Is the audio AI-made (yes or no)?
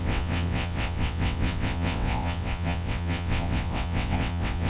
yes